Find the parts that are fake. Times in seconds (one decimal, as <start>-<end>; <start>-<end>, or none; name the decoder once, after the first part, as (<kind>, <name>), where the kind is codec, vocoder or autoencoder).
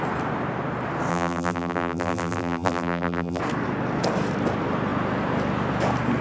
1.1-3.4 (vocoder, BigVGAN v2)